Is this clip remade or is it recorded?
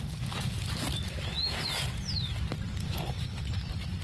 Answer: recorded